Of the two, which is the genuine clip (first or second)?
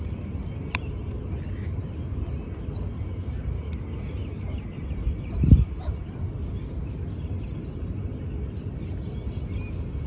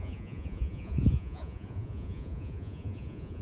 first